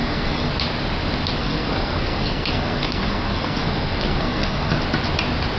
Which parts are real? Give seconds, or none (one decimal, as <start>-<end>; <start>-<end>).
0.5-1.4; 4.8-5.6